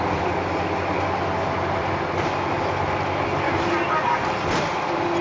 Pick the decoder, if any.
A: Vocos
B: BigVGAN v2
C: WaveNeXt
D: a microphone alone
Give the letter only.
D